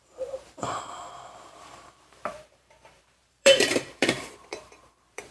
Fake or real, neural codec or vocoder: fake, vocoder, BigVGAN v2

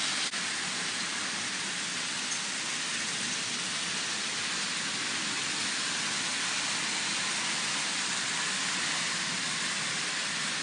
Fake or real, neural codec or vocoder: real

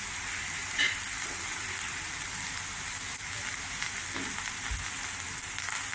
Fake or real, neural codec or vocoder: real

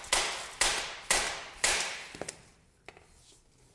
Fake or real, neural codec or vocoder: real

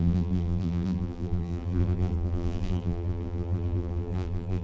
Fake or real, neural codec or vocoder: fake, vocoder, BigVGAN v2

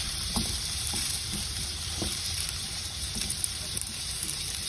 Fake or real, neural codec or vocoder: fake, vocoder, BigVGAN v2